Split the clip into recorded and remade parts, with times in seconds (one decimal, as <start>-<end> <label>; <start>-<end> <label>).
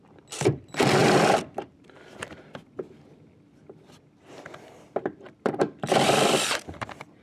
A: 0.0-7.2 remade